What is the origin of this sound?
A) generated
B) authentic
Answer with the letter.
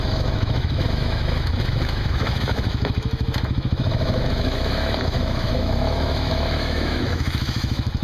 A